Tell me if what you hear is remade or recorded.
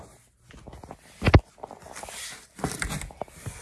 recorded